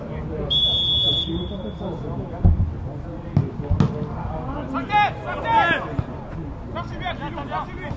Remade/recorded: recorded